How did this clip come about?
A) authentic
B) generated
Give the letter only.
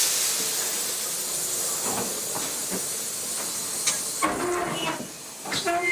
A